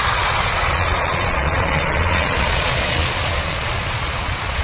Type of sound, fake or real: fake